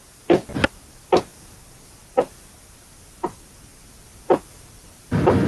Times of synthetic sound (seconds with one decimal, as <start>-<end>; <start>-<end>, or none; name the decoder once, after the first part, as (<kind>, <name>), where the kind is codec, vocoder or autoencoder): none